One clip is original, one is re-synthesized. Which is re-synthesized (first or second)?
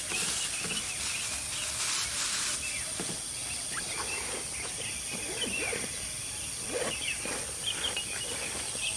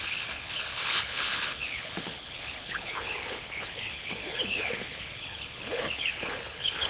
second